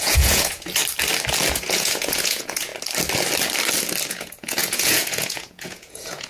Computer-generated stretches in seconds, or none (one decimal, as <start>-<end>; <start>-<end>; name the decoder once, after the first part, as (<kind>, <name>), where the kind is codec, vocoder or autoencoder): 0.0-0.8 (vocoder, Vocos); 1.5-2.7; 4.1-6.3